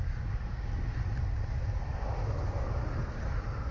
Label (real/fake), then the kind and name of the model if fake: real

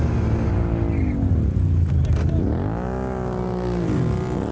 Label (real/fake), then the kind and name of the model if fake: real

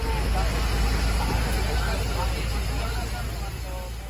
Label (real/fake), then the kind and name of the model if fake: real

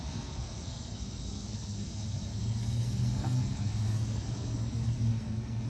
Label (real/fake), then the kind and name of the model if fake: fake, codec, SNAC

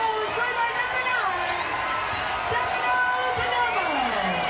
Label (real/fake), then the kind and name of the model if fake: real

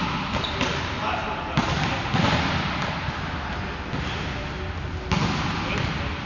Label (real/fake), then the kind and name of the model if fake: real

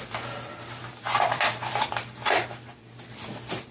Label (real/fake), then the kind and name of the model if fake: real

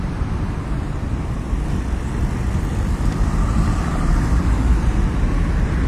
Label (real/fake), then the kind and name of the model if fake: fake, vocoder, BigVGAN v2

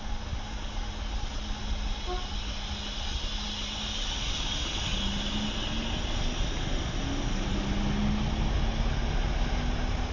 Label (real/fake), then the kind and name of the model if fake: real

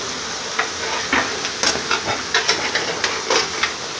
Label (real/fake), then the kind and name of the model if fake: real